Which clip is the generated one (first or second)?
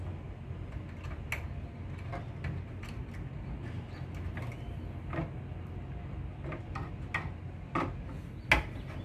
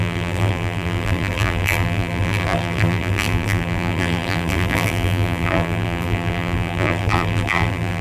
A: second